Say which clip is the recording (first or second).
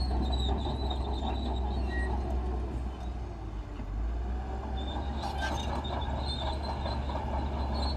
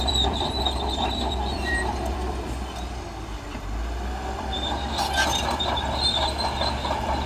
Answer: first